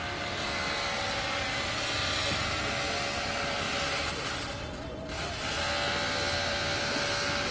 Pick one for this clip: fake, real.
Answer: real